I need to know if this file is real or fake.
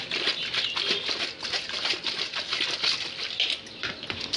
real